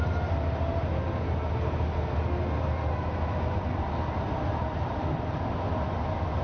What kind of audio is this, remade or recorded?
recorded